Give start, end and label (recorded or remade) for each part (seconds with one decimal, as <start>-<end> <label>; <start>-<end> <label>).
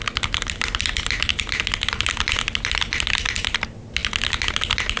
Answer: 0.0-5.0 recorded